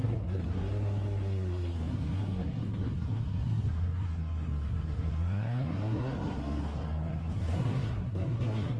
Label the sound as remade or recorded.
remade